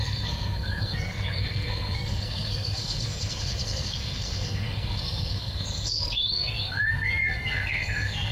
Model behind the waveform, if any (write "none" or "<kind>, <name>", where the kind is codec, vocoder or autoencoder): codec, SNAC